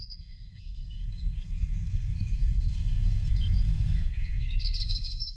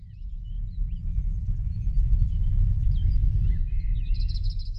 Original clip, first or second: second